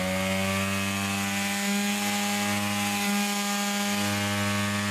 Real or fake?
real